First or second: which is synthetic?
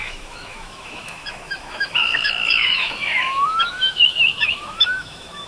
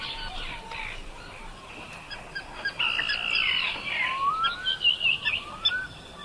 first